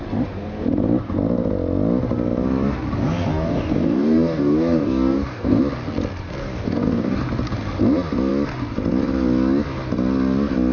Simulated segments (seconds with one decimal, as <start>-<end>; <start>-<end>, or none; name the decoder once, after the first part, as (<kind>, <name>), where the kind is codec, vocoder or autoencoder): 3.3-5.6 (codec, DAC); 6.4-7.2